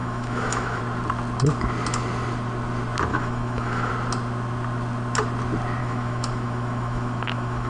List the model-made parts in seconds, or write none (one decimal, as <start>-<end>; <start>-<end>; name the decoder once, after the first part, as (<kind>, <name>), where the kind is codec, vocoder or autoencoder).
0.0-0.8 (autoencoder, DAC-VAE); 3.1-3.9; 5.8-7.7